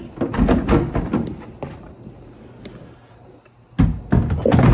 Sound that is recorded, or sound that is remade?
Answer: recorded